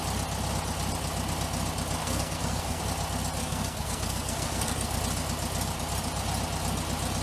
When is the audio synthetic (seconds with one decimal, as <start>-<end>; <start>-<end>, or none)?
2.0-2.8; 3.4-5.0